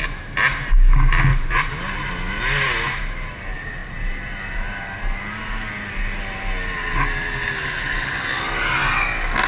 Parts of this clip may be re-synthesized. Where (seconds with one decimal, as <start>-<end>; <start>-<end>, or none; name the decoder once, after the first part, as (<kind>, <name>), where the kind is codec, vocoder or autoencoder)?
1.3-2.1 (vocoder, BigVGAN v2); 3.8-5.2